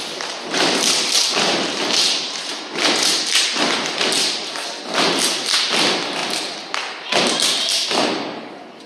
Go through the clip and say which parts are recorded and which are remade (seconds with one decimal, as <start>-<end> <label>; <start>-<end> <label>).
0.0-8.9 recorded